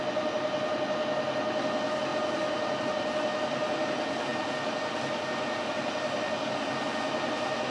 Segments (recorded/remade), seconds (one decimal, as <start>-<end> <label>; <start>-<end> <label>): 0.0-7.7 recorded